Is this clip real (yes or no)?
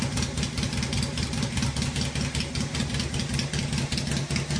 yes